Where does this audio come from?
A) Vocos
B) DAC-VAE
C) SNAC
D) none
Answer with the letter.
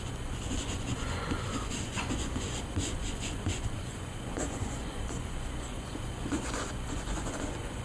A